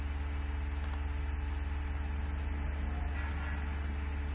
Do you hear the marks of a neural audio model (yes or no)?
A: no